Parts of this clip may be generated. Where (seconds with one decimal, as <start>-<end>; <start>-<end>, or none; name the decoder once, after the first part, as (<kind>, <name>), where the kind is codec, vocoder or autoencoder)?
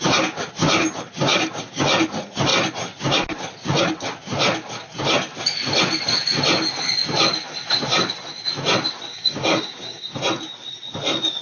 1.3-1.8 (codec, DAC); 9.1-10.2